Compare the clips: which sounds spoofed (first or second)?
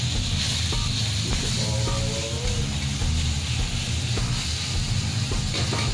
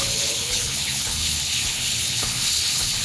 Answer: second